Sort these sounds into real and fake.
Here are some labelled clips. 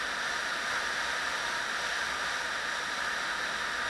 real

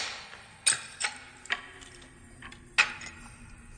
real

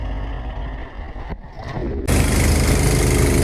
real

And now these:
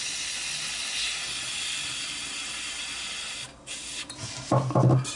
real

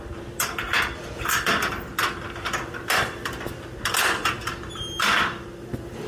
real